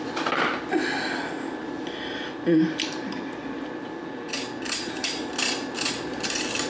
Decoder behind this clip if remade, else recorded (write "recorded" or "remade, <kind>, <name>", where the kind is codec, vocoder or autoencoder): recorded